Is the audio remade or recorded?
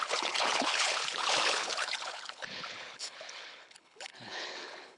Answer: remade